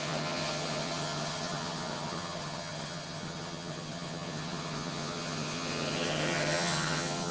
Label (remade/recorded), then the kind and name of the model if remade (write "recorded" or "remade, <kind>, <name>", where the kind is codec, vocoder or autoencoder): remade, vocoder, HiFi-GAN